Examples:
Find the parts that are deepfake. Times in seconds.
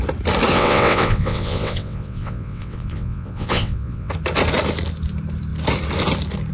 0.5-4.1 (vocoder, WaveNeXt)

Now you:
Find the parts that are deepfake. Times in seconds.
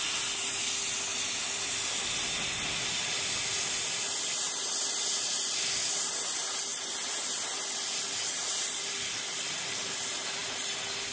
none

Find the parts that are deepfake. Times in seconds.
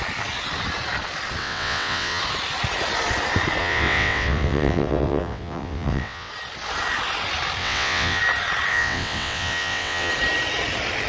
1.4-2.2 (vocoder, WaveNeXt); 3.6-6.3; 7.6-8.2; 8.7-10.1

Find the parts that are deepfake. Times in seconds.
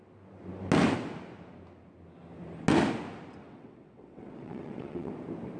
3.4-5.1 (vocoder, WaveNeXt)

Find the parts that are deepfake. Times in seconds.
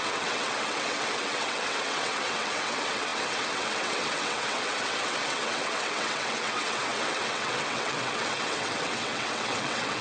0.0-10.0 (vocoder, WaveNeXt)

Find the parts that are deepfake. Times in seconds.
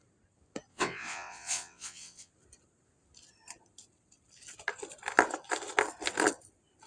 0.7-2.3 (vocoder, WaveNeXt)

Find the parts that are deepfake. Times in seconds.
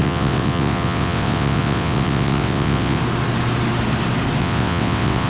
0.0-3.0 (vocoder, WaveNeXt); 4.4-5.3